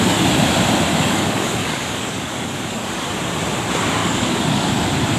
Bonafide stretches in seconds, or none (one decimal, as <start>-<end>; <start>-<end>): 0.0-0.9; 3.2-4.0; 4.7-5.2